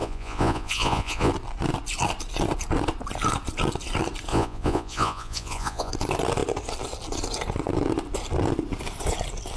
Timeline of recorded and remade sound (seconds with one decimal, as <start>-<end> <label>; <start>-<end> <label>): 0.0-1.3 remade; 1.3-4.3 recorded; 4.3-5.9 remade; 5.9-9.6 recorded

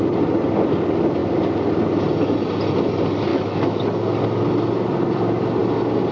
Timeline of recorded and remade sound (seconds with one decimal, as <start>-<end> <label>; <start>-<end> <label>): 0.0-3.3 recorded; 3.3-3.8 remade; 3.8-6.1 recorded

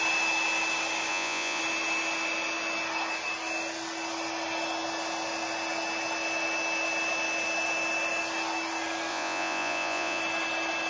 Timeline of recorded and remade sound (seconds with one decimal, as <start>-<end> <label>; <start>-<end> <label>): 0.0-1.1 recorded; 1.1-1.6 remade; 1.6-9.1 recorded; 9.1-10.2 remade; 10.2-10.9 recorded

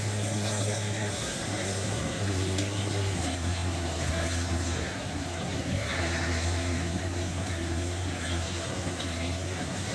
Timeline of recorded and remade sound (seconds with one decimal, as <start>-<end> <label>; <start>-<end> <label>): 0.0-9.9 remade

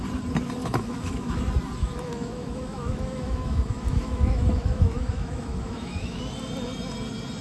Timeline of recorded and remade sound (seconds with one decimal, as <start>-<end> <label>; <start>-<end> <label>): 0.0-0.6 recorded; 0.6-1.4 remade; 1.4-1.8 recorded; 1.8-6.2 remade; 6.2-7.4 recorded